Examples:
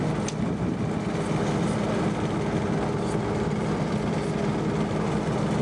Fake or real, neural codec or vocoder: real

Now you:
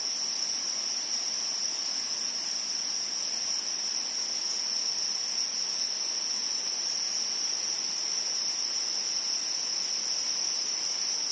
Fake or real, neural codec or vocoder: real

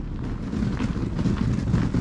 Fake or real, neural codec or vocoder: real